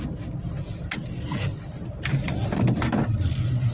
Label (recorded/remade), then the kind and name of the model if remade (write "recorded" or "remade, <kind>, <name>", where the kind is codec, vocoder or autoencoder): recorded